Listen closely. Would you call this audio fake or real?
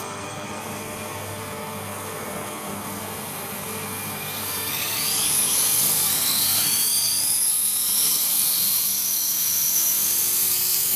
fake